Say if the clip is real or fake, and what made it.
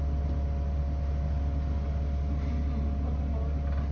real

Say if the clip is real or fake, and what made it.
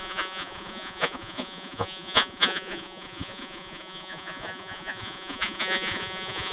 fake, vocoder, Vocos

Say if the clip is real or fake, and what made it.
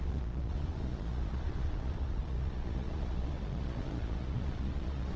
fake, vocoder, Vocos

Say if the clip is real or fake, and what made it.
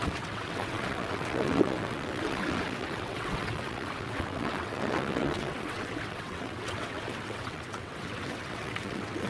fake, vocoder, WaveNeXt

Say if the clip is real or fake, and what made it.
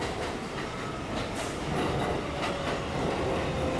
real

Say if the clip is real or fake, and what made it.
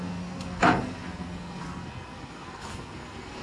fake, codec, SNAC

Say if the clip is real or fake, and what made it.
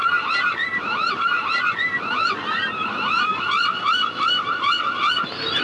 fake, vocoder, BigVGAN v2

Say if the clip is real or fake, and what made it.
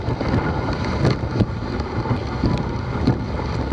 real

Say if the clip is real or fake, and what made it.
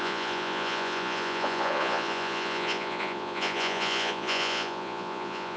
fake, vocoder, Vocos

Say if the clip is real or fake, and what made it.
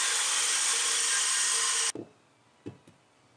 real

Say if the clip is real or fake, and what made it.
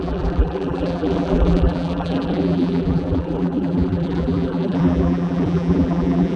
fake, vocoder, BigVGAN v2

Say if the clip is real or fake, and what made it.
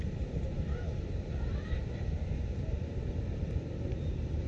fake, vocoder, BigVGAN v2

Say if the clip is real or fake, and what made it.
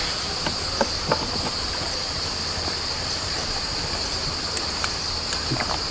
real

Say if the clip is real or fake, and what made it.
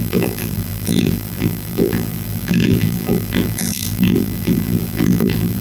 fake, vocoder, BigVGAN v2